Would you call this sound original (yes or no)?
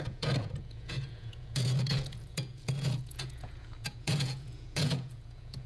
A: no